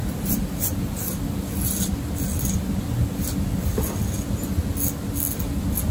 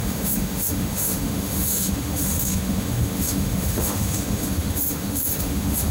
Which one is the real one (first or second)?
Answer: first